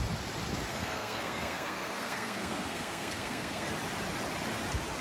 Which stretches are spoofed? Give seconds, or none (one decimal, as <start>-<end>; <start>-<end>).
0.7-3.7